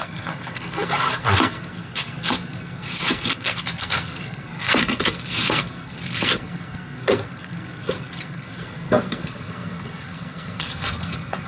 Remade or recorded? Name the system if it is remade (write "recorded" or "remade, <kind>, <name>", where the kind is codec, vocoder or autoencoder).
remade, codec, SNAC